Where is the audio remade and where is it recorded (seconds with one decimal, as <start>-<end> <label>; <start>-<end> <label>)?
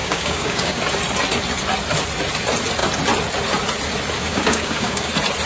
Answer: 0.0-0.8 remade; 0.8-4.2 recorded; 4.2-5.1 remade; 5.1-5.5 recorded